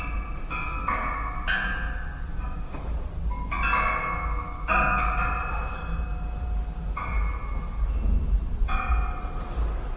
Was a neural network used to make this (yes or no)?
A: no